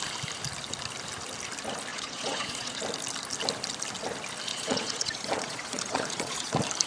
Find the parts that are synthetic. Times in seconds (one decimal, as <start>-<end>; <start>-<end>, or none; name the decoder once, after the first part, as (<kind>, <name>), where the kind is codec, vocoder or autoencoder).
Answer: 1.9-2.8 (vocoder, Vocos); 4.5-6.5